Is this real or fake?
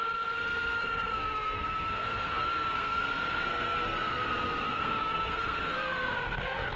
fake